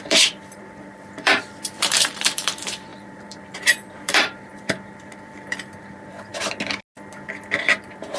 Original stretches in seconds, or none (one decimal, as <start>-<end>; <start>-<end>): 6.3-7.6